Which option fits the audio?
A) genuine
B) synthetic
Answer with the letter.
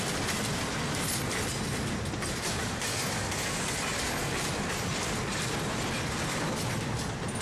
A